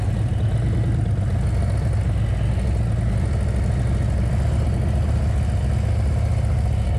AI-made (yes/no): no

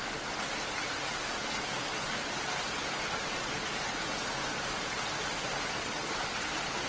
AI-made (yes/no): no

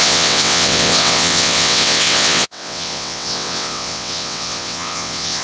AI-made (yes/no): yes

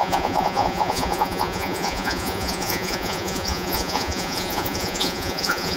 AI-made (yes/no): yes